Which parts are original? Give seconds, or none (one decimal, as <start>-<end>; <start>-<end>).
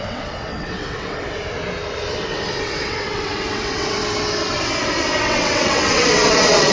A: 1.4-2.1; 4.0-5.2